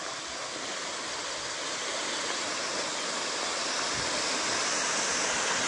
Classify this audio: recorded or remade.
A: remade